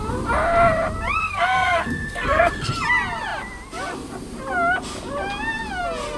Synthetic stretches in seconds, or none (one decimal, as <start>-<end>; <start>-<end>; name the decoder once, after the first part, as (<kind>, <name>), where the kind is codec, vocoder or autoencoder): 1.2-2.7 (codec, SNAC)